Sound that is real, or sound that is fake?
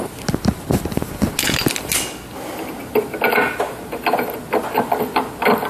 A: real